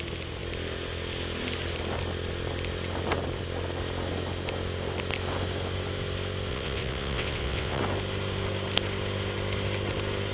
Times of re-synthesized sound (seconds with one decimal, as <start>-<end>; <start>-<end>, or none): 6.5-7.8